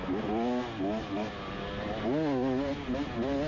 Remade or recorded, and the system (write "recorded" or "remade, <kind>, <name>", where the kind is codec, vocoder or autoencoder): recorded